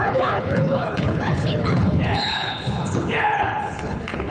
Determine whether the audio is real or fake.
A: fake